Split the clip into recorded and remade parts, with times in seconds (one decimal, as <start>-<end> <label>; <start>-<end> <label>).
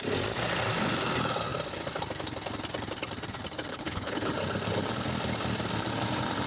0.0-3.7 recorded; 3.7-4.3 remade; 4.3-6.5 recorded